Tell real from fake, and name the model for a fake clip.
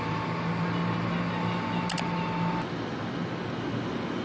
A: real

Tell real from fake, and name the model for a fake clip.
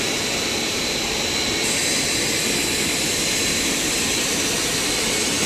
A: real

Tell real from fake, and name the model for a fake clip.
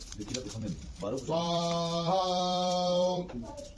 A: fake, vocoder, BigVGAN v2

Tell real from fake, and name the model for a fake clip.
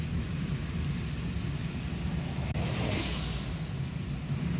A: real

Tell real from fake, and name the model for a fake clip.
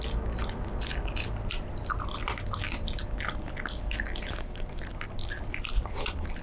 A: real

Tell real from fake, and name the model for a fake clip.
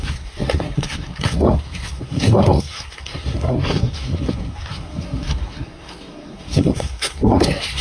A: fake, codec, SNAC